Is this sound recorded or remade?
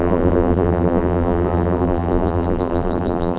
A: remade